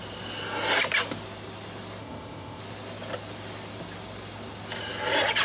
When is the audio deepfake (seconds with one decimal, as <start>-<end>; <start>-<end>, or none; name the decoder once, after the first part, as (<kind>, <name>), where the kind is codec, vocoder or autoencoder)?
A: 2.0-2.6 (codec, ZipCodec)

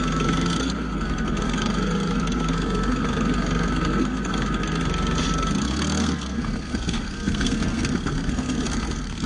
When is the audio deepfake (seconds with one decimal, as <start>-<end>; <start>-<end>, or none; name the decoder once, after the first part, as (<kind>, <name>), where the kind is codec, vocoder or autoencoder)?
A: 0.0-9.3 (codec, SNAC)